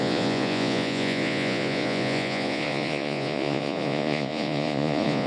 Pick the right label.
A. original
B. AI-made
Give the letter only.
B